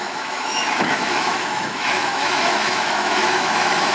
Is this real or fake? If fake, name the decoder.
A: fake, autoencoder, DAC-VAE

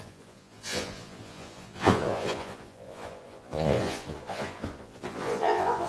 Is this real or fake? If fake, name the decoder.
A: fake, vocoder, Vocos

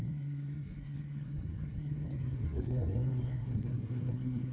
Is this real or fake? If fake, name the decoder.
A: fake, codec, SNAC